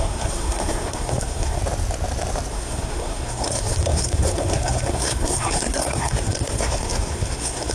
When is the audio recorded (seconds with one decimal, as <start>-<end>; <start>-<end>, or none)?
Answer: 1.6-2.5